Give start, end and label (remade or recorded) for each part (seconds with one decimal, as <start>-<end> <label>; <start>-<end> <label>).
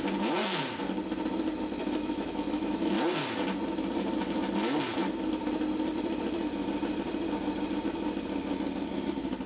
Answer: 0.0-1.8 recorded; 1.8-2.9 remade; 2.9-9.5 recorded